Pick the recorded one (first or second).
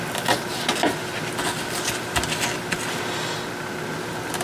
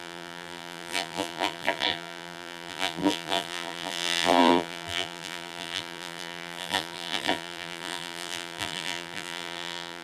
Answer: first